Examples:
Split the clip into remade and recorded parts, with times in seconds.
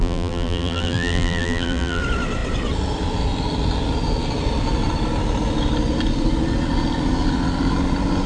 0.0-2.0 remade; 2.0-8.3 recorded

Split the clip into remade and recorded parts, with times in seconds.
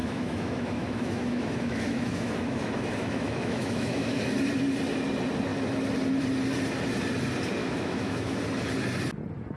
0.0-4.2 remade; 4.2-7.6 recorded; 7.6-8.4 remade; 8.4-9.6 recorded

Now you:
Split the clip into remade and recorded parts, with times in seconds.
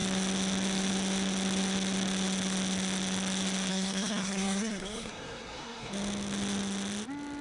0.0-3.7 recorded; 3.7-5.9 remade; 5.9-7.4 recorded